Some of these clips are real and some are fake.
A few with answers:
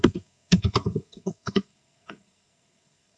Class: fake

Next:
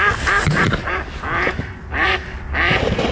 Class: real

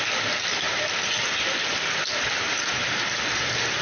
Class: real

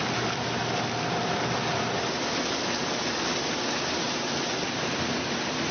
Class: real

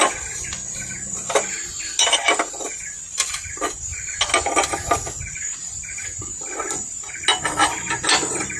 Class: real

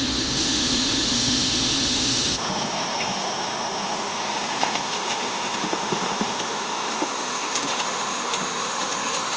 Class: fake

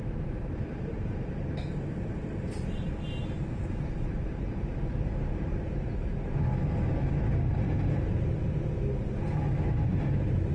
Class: fake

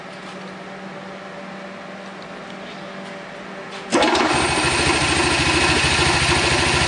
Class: real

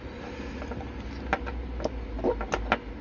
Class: real